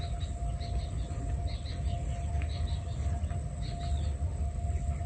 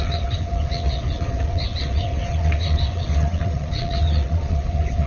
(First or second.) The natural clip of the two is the first